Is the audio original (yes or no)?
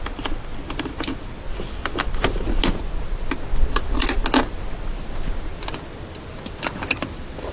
yes